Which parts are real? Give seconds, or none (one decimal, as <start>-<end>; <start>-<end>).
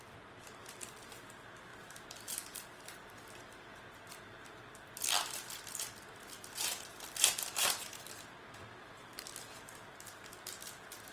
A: 0.0-11.1